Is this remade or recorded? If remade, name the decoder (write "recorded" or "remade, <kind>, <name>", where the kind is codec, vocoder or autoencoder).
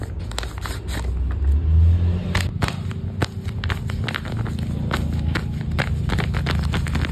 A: recorded